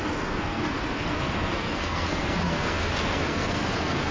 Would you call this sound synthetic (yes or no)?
yes